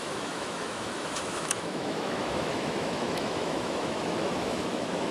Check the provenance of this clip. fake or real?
fake